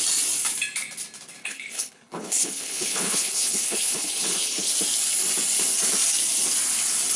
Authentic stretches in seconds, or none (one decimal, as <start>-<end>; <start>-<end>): 0.0-1.4; 4.7-7.2